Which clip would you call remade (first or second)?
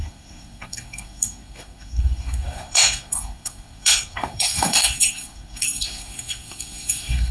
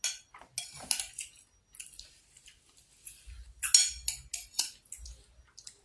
first